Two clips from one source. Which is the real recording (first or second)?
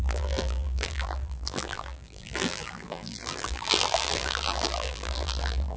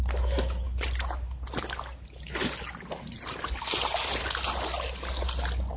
second